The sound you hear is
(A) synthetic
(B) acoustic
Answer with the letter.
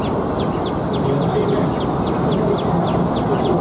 B